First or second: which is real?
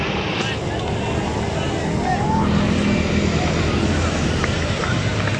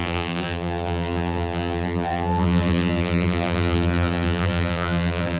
first